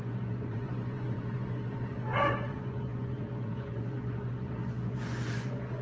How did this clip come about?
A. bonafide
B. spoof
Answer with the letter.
B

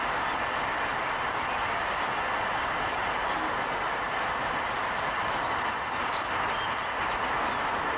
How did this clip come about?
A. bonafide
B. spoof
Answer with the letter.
A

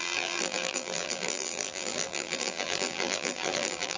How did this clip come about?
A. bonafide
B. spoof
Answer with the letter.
B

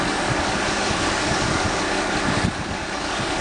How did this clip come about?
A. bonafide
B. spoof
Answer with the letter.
B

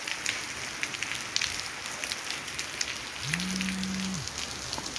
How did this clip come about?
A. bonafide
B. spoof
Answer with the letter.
A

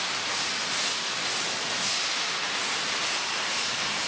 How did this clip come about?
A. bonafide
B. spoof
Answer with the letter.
A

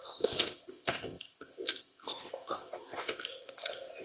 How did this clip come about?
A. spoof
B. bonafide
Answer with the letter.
A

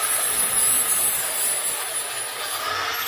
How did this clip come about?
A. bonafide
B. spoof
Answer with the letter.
A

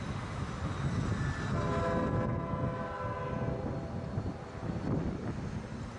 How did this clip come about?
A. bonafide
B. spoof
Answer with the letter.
A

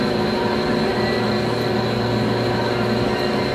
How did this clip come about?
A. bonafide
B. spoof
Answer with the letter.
A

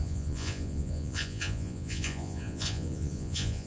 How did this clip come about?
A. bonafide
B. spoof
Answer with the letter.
B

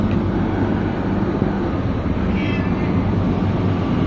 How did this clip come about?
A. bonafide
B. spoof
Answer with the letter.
A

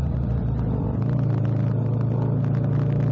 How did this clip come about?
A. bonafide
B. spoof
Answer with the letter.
A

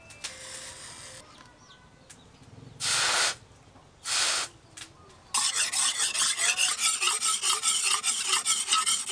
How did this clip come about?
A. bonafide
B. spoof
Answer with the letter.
A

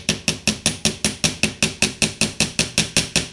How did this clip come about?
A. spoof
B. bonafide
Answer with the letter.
B